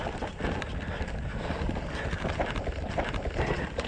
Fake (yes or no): no